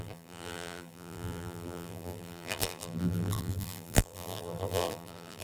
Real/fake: fake